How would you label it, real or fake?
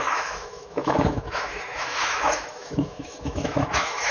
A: fake